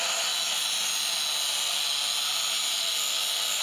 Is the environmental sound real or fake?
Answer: real